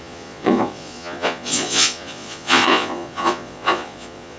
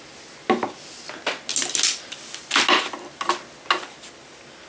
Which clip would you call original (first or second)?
second